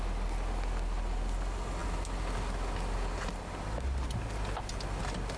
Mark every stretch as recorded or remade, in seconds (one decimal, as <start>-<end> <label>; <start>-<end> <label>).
0.0-5.4 recorded